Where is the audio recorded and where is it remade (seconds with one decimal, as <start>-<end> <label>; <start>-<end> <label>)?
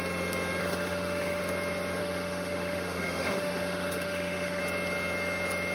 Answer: 0.0-0.6 recorded; 0.6-1.4 remade; 1.4-2.0 recorded; 2.0-4.6 remade; 4.6-5.7 recorded